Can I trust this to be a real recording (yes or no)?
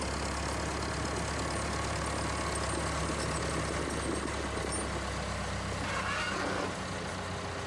yes